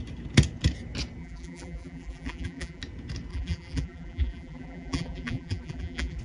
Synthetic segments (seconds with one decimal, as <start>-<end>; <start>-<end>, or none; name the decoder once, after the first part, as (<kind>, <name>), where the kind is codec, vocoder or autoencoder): 1.2-2.8 (vocoder, BigVGAN v2); 3.3-6.2